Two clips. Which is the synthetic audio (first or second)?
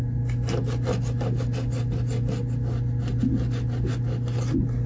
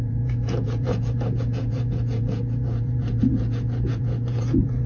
second